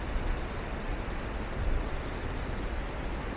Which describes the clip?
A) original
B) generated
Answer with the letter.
A